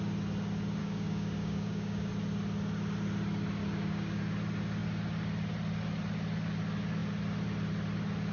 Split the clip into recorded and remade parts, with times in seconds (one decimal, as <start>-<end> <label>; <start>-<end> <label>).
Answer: 0.0-0.8 recorded; 0.8-2.1 remade; 2.1-3.6 recorded; 3.6-4.2 remade; 4.2-8.3 recorded